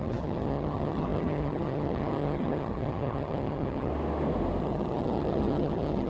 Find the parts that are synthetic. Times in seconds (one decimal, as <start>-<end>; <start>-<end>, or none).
0.0-3.9; 4.6-6.1